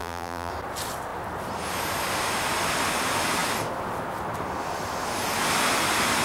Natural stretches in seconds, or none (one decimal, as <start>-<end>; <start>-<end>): 0.5-6.2